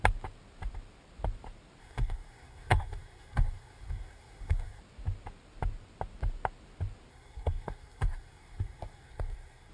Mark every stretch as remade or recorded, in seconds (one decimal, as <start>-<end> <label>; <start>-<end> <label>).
0.0-1.8 recorded; 1.8-4.8 remade; 4.8-7.1 recorded; 7.1-9.7 remade